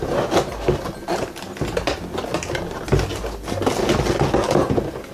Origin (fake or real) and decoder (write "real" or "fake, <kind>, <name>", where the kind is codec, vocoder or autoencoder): real